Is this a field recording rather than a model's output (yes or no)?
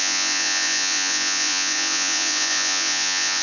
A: no